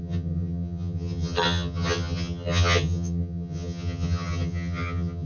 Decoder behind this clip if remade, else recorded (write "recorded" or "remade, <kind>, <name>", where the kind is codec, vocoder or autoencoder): remade, vocoder, HiFi-GAN